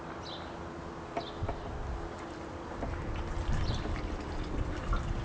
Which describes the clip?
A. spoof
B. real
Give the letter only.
B